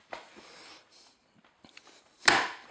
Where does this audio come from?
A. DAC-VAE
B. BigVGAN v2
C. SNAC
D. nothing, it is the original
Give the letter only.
D